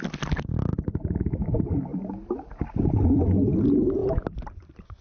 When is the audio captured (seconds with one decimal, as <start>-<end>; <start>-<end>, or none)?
0.0-4.0